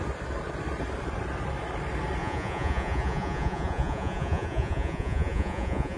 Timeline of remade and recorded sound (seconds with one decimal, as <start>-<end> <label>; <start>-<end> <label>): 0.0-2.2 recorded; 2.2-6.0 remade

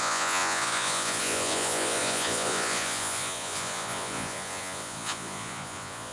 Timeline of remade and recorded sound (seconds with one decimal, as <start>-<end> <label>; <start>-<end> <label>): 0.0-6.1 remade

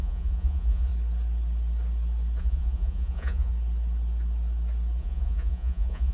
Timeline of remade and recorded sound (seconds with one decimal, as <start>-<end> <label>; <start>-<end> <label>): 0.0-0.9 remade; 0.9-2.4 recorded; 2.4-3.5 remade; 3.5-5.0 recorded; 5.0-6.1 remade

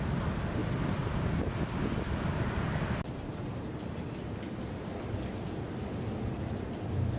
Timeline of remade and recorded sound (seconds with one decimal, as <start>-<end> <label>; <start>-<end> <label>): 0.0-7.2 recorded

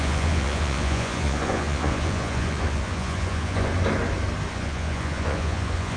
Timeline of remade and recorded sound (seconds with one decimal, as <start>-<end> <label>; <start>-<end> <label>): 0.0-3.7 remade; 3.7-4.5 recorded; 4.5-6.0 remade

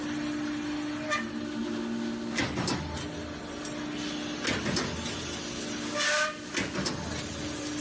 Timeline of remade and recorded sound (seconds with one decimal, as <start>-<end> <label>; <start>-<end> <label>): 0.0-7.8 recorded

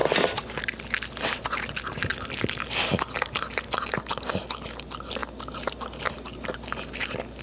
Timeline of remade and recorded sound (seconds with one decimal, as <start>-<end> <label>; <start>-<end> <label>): 0.0-7.4 recorded